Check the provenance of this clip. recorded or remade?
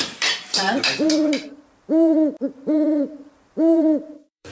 remade